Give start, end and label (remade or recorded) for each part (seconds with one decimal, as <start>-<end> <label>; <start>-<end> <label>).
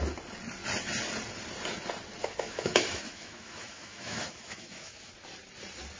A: 0.0-2.2 recorded; 2.2-5.1 remade; 5.1-6.0 recorded